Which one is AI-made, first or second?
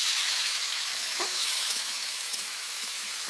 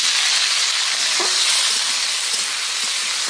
first